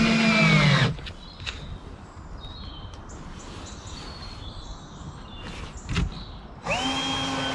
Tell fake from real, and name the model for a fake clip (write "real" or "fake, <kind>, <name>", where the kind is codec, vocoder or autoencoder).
real